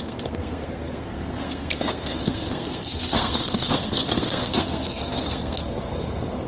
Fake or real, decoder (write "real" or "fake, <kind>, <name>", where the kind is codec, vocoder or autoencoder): fake, codec, SNAC